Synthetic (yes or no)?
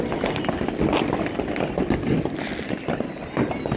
no